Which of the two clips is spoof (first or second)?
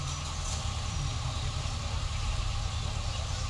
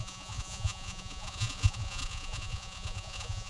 second